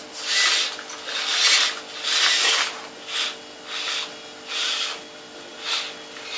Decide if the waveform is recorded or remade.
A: recorded